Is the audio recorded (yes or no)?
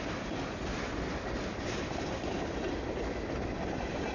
yes